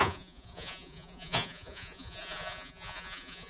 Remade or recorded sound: remade